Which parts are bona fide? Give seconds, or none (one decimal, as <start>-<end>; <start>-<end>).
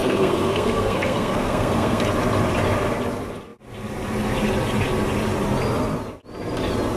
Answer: 2.0-7.0